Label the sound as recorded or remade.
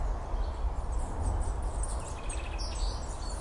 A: recorded